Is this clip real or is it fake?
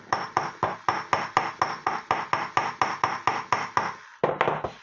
real